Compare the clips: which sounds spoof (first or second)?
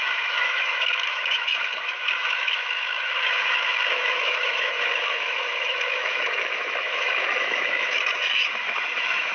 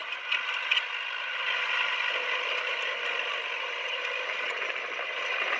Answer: first